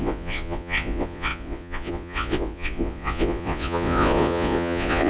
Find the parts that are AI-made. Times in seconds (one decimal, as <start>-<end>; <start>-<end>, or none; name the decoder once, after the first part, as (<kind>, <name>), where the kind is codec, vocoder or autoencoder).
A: 0.0-5.1 (vocoder, Vocos)